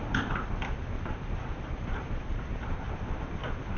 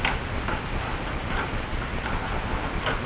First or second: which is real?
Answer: second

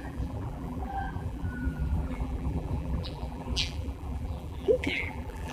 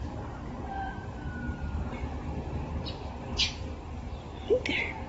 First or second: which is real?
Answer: second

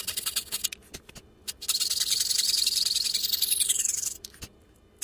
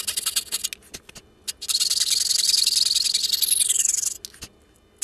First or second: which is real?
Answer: second